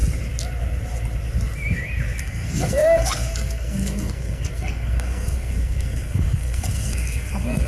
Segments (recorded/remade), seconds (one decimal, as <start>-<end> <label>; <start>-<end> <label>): 0.0-2.2 recorded; 2.2-7.7 remade